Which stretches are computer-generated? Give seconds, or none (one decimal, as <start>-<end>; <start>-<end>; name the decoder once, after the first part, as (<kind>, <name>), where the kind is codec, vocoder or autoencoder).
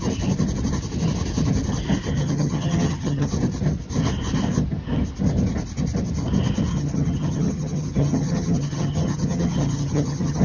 2.2-3.3 (vocoder, HiFi-GAN); 6.7-10.4